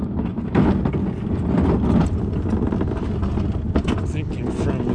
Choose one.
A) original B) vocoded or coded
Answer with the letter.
A